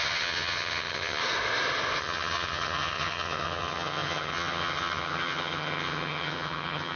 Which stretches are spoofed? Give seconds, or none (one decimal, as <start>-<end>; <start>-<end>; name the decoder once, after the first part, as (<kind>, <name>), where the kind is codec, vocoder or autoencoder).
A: 0.0-1.2 (vocoder, HiFi-GAN); 2.0-7.0